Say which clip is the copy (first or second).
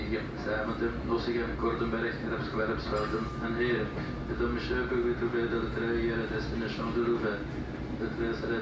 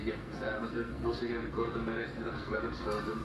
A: second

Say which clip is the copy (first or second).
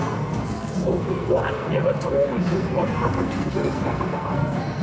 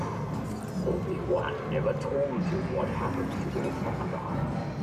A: first